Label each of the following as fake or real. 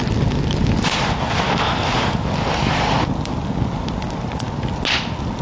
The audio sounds real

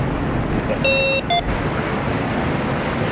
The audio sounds real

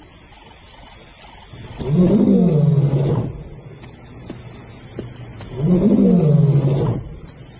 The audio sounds real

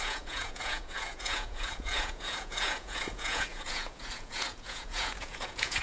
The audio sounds fake